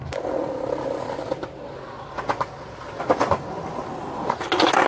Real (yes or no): yes